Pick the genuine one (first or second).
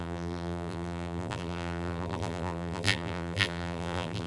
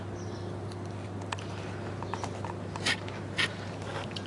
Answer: second